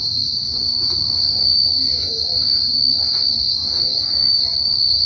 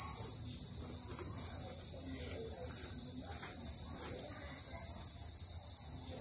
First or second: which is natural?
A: second